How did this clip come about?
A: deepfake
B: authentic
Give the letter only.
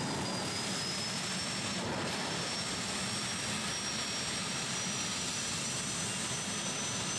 B